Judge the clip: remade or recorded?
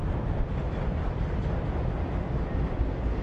recorded